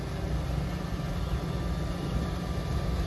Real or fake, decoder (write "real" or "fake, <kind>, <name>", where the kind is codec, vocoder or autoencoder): real